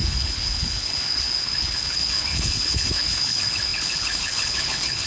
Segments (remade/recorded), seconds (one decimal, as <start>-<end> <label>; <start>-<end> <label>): 0.0-5.1 remade